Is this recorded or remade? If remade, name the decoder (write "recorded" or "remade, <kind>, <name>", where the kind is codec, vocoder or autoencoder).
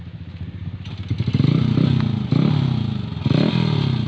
recorded